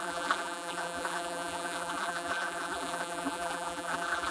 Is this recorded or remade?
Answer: remade